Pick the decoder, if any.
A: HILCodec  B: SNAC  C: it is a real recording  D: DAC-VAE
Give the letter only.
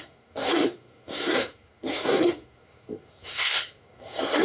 B